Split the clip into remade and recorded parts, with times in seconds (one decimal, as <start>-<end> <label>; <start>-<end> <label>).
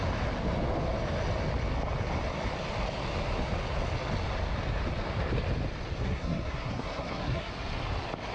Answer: 0.0-6.0 recorded; 6.0-7.5 remade; 7.5-8.3 recorded